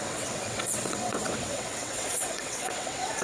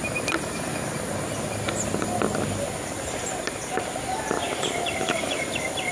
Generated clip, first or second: first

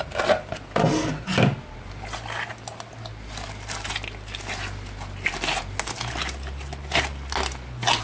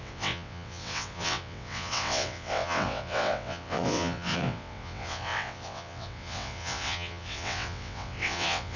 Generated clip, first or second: second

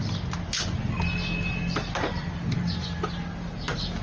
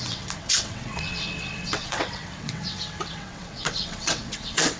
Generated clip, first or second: second